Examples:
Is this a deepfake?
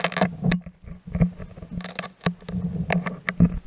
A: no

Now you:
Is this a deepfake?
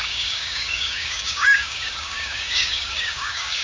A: yes